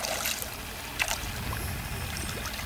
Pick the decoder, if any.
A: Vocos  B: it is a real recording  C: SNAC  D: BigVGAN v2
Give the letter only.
B